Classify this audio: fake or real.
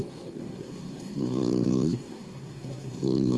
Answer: fake